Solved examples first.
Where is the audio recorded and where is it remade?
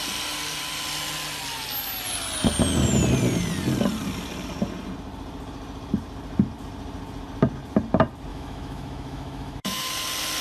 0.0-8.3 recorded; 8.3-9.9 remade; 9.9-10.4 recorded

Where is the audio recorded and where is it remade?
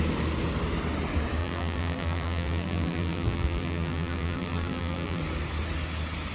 0.0-1.4 recorded; 1.4-5.2 remade; 5.2-6.3 recorded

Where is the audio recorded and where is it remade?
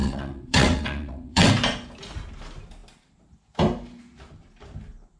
0.0-1.5 remade; 1.5-5.2 recorded